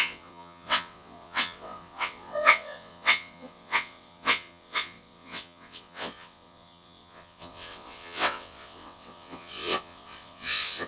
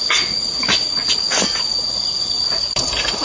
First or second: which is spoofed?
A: first